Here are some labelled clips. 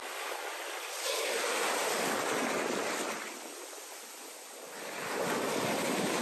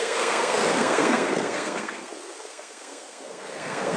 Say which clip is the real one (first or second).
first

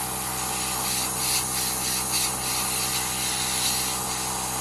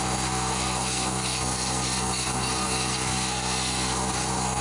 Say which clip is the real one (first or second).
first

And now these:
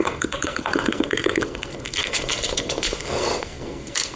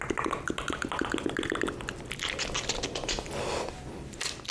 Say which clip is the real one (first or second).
second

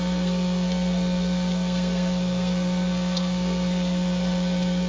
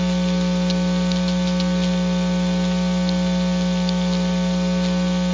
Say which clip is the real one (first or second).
second